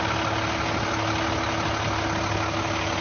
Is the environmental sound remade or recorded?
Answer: recorded